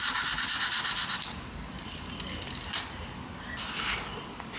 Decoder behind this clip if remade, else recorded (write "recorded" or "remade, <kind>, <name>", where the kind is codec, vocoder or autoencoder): recorded